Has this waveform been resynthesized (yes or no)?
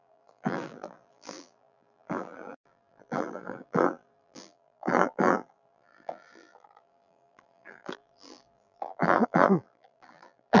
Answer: yes